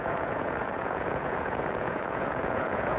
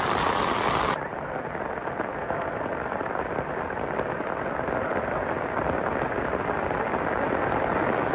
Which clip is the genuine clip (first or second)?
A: second